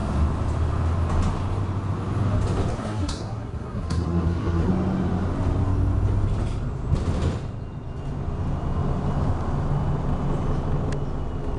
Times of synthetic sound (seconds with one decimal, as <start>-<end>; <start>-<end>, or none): 2.7-4.7